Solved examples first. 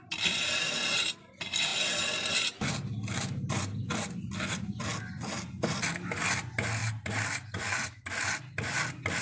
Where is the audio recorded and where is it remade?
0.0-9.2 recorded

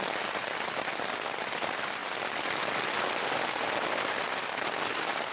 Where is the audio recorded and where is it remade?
0.0-5.3 recorded

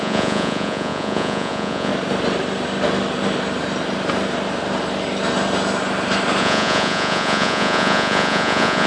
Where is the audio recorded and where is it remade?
0.0-1.9 remade; 1.9-6.4 recorded; 6.4-8.9 remade